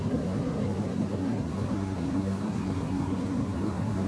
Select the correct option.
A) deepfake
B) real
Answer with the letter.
A